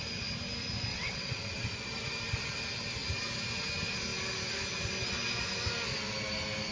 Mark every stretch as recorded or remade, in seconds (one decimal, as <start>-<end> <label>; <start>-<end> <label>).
0.0-0.9 recorded; 0.9-1.6 remade; 1.6-6.7 recorded